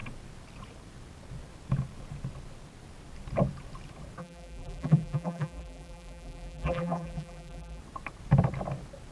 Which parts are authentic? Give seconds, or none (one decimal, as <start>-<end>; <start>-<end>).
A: 0.0-4.2; 7.8-9.1